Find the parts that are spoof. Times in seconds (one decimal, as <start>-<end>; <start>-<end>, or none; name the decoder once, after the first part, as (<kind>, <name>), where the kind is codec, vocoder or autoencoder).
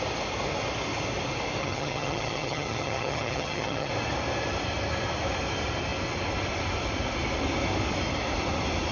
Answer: 1.6-3.9 (vocoder, HiFi-GAN)